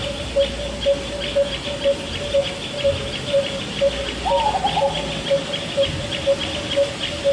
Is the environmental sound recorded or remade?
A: recorded